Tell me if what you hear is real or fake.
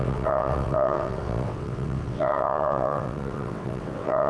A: fake